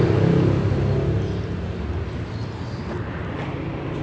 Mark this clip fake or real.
real